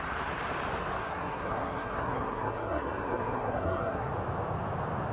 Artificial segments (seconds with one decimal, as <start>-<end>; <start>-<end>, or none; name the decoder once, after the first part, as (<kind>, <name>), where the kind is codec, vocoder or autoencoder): 1.0-4.1 (codec, SNAC)